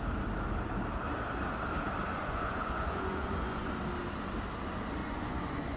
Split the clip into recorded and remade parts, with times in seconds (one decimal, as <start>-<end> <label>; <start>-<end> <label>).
0.0-2.1 recorded; 2.1-3.7 remade; 3.7-5.0 recorded; 5.0-5.8 remade